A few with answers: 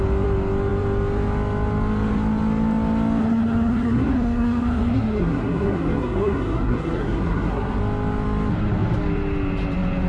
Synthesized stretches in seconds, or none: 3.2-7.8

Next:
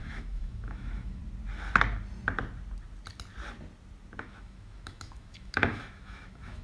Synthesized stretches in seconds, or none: 0.0-1.2; 4.2-6.6